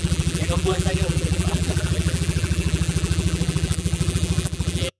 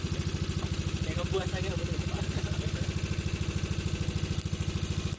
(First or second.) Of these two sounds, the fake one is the first